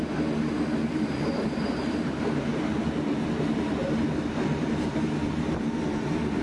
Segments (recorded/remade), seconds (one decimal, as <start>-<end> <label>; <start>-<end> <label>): 0.0-0.8 recorded; 0.8-2.1 remade; 2.1-6.4 recorded